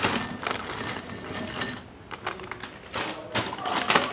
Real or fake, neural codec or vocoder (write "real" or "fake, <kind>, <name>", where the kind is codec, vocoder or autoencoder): real